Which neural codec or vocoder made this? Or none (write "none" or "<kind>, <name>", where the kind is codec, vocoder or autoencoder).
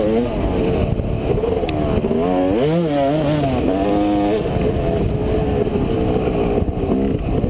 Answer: none